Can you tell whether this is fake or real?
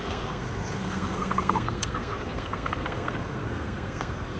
fake